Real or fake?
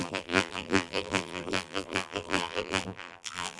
fake